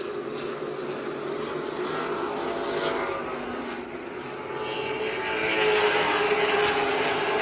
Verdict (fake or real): real